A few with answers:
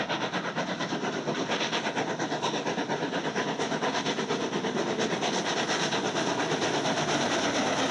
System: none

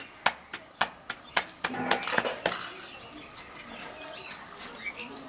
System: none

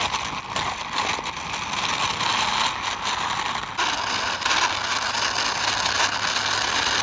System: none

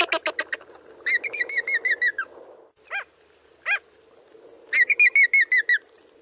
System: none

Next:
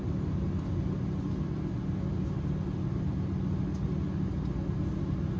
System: none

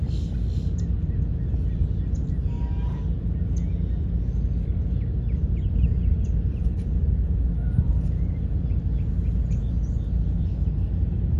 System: none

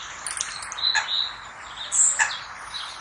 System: none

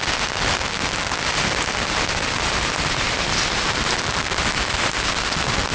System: none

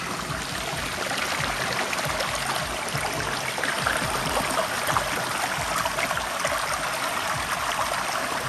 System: none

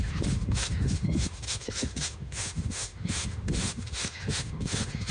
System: autoencoder, DAC-VAE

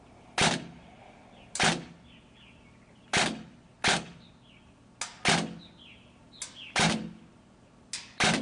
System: none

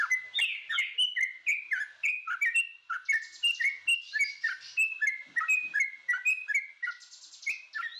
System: none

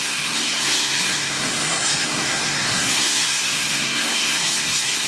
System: codec, SNAC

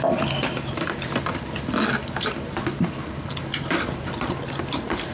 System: none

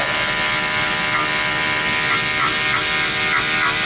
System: none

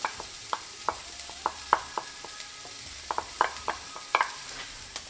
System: vocoder, BigVGAN v2